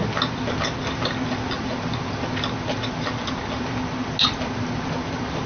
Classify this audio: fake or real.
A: real